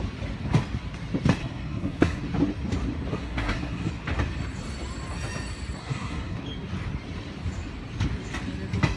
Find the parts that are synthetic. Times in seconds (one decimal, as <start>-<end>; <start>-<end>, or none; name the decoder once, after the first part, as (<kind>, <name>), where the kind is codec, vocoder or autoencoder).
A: 1.4-2.2 (codec, SNAC); 3.1-3.9; 5.8-6.4